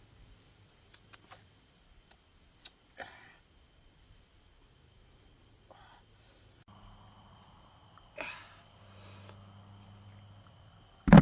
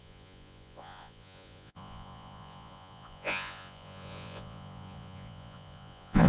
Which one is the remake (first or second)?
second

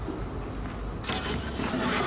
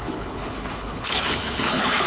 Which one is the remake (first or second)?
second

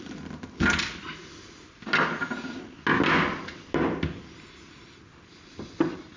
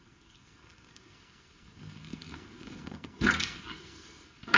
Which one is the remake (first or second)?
second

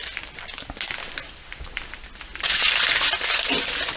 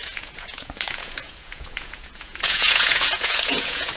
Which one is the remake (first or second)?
second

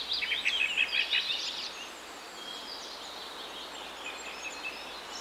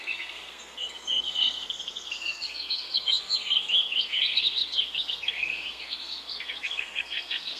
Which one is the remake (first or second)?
second